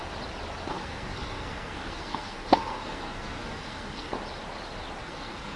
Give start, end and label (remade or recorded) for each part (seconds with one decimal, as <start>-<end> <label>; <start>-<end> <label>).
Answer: 0.0-0.7 recorded; 0.7-4.1 remade; 4.1-5.0 recorded; 5.0-5.6 remade